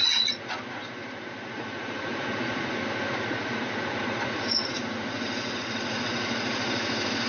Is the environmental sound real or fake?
fake